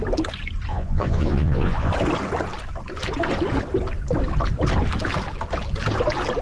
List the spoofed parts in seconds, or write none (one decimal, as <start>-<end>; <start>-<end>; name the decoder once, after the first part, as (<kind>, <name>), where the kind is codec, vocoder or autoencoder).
0.7-1.9 (vocoder, Vocos)